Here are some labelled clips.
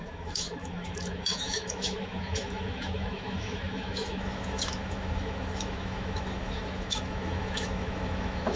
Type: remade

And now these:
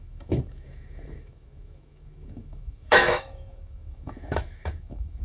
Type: remade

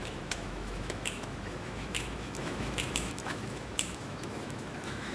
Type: remade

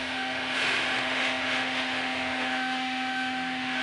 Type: remade